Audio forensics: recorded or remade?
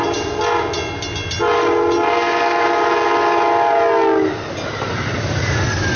recorded